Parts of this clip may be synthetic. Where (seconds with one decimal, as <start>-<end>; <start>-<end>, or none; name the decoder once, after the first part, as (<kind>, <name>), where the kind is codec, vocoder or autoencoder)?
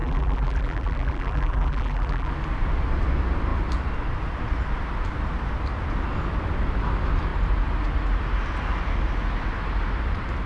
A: 0.0-2.3 (vocoder, BigVGAN v2)